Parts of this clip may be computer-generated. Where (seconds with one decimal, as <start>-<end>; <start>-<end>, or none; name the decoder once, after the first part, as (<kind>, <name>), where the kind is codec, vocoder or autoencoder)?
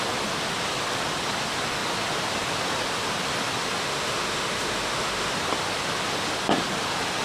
3.8-5.3 (autoencoder, DAC-VAE)